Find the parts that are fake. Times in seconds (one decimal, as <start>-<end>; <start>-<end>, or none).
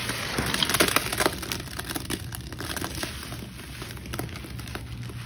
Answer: none